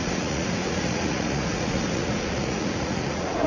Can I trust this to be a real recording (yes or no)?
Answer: no